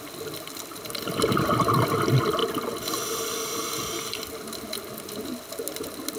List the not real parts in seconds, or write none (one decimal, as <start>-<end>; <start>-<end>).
none